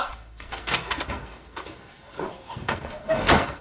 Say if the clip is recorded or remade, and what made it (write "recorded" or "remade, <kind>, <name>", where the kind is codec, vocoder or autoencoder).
remade, codec, SNAC